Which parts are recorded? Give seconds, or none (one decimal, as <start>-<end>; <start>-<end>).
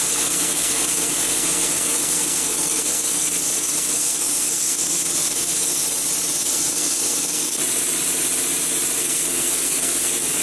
5.8-6.4; 7.6-9.0